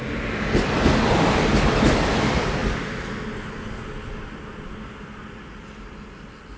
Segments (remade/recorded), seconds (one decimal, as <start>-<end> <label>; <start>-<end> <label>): 0.0-6.6 recorded